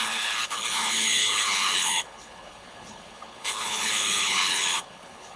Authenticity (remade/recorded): remade